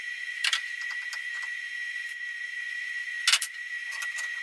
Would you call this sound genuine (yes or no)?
yes